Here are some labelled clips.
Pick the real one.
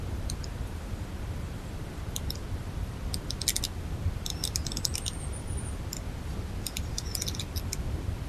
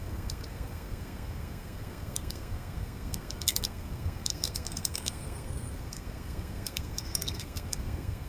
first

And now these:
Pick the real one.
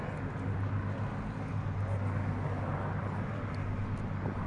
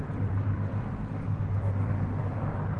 first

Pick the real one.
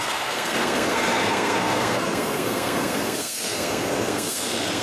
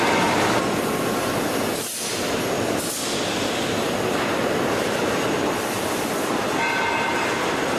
second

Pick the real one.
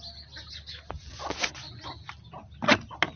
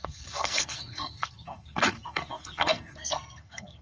first